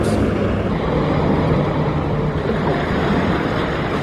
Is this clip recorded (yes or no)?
yes